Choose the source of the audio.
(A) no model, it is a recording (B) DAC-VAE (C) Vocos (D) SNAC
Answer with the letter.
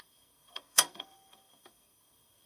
D